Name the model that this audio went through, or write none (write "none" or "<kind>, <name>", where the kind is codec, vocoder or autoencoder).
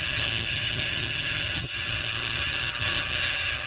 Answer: vocoder, HiFi-GAN